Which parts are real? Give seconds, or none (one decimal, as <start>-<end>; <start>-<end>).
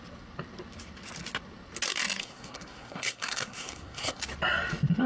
0.0-2.2; 4.2-5.1